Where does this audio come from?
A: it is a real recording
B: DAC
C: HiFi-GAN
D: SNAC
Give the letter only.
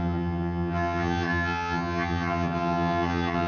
C